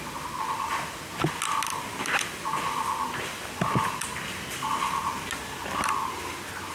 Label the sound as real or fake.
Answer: real